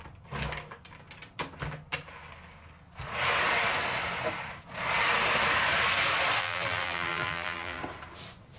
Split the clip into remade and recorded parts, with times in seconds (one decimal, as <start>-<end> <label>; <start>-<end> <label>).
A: 0.0-6.4 recorded; 6.4-7.8 remade; 7.8-8.6 recorded